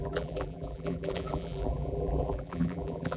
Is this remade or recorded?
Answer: remade